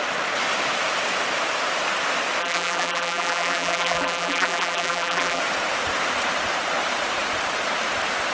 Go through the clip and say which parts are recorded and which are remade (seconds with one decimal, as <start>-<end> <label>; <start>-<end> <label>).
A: 0.0-2.4 recorded; 2.4-5.4 remade; 5.4-8.3 recorded